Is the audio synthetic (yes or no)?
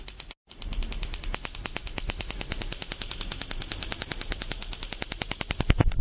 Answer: no